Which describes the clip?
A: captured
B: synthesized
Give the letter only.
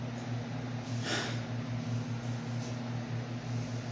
A